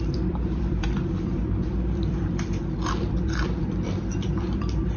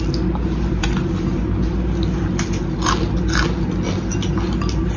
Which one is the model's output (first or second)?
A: first